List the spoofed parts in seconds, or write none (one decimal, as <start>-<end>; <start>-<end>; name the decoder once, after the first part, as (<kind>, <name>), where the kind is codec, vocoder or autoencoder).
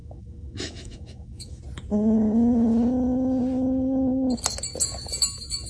0.0-1.6 (autoencoder, DAC-VAE)